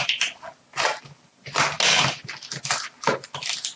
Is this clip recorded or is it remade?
recorded